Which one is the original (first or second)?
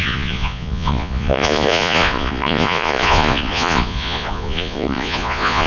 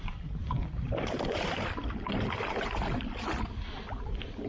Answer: second